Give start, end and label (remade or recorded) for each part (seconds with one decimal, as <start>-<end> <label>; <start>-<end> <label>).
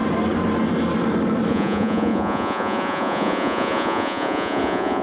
0.0-1.5 recorded; 1.5-5.0 remade